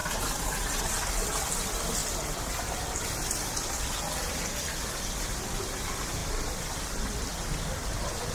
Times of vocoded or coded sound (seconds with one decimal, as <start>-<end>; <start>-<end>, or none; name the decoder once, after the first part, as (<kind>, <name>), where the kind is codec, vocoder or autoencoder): none